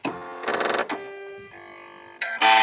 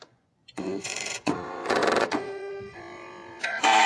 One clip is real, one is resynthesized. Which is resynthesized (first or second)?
second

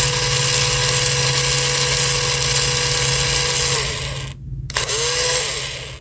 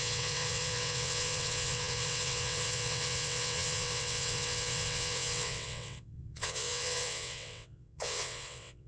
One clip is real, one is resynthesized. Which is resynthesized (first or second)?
second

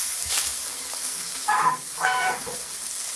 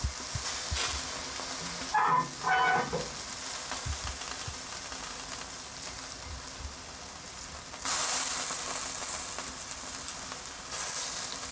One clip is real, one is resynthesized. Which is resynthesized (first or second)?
first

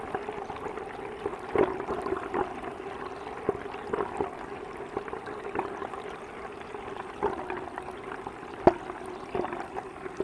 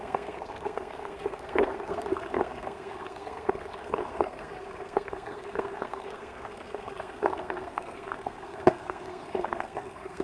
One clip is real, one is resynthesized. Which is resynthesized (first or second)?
second